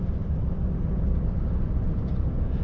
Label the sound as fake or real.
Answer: real